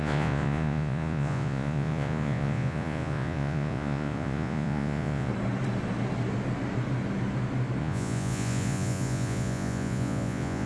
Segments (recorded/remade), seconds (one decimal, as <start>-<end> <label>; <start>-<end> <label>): 0.0-5.3 remade; 5.3-7.8 recorded; 7.8-10.7 remade